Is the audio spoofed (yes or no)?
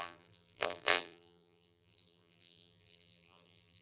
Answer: yes